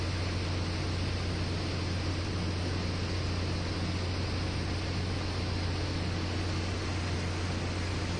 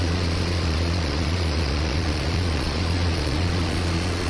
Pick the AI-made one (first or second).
second